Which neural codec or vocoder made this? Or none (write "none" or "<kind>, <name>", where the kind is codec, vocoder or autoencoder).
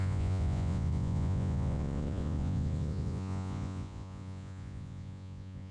vocoder, Vocos